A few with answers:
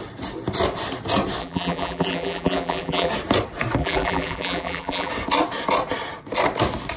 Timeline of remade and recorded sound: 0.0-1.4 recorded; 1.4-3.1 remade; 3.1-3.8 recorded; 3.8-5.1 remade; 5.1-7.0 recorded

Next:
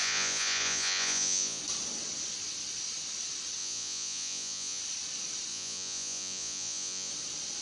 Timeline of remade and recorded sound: 0.0-1.6 remade; 1.6-3.6 recorded; 3.6-4.8 remade; 4.8-5.5 recorded; 5.5-7.1 remade; 7.1-7.6 recorded

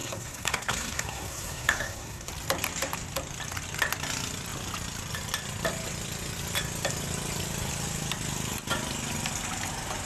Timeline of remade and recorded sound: 0.0-2.3 remade; 2.3-10.1 recorded

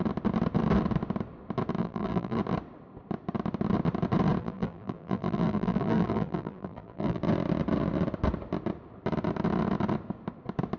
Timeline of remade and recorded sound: 0.0-1.8 recorded; 1.8-2.4 remade; 2.4-4.4 recorded; 4.4-7.2 remade; 7.2-10.8 recorded

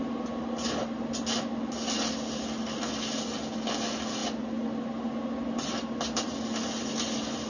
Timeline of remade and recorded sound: 0.0-7.5 recorded

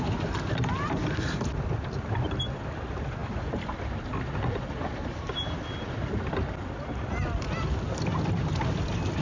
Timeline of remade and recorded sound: 0.0-9.2 recorded

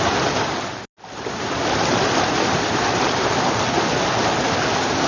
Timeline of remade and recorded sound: 0.0-1.9 recorded; 1.9-3.2 remade; 3.2-5.1 recorded